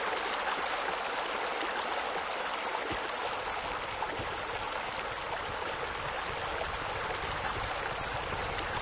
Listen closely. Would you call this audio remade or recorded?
recorded